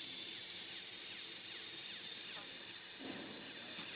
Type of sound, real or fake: real